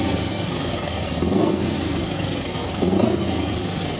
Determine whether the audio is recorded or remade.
remade